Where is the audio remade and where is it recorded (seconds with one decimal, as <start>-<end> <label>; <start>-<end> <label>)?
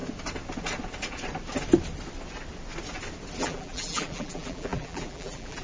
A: 0.0-3.4 recorded; 3.4-5.6 remade